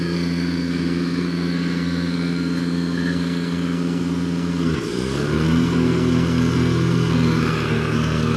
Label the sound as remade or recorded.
remade